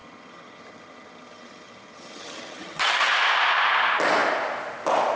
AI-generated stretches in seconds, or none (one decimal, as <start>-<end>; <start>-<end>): 0.0-3.1